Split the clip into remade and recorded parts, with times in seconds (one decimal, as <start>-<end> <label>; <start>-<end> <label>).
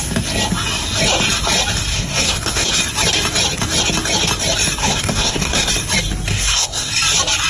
0.0-1.9 recorded; 1.9-2.8 remade; 2.8-4.8 recorded; 4.8-5.7 remade; 5.7-6.3 recorded; 6.3-6.9 remade; 6.9-7.5 recorded